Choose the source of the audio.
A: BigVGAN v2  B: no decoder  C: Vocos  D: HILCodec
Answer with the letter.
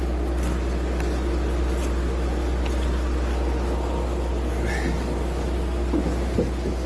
B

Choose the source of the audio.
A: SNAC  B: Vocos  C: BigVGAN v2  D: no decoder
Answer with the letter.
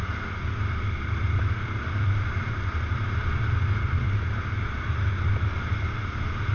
D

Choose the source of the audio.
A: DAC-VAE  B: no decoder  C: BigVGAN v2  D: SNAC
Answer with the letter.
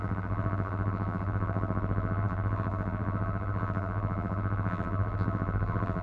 C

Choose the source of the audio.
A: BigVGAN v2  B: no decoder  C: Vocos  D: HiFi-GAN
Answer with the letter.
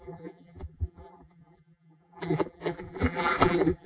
A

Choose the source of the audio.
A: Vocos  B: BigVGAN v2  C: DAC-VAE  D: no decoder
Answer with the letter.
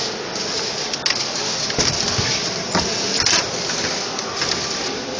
D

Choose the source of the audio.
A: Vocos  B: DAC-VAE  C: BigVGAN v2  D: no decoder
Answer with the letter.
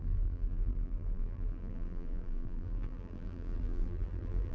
C